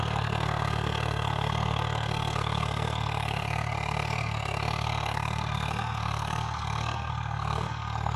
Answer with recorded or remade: remade